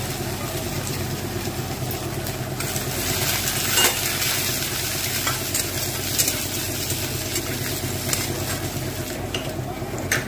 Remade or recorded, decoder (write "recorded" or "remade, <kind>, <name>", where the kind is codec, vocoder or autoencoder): recorded